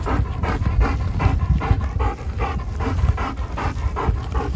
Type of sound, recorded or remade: remade